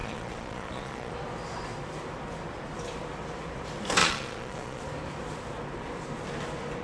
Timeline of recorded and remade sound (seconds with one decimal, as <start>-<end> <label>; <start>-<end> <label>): 0.0-1.1 remade; 1.1-4.0 recorded; 4.0-4.8 remade; 4.8-6.8 recorded